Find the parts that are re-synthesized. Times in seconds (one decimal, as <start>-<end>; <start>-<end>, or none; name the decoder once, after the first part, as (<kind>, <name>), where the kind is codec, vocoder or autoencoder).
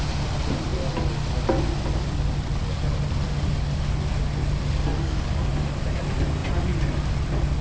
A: 4.9-5.5 (codec, DAC)